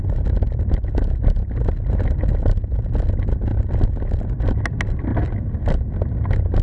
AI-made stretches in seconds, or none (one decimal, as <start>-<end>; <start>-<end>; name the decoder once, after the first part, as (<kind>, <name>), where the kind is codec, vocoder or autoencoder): none